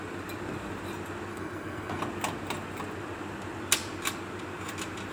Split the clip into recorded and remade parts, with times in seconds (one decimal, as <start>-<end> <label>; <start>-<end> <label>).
0.0-1.3 recorded; 1.3-2.0 remade; 2.0-5.1 recorded